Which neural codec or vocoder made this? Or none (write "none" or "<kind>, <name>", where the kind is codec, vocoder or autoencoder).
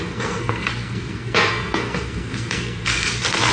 codec, SNAC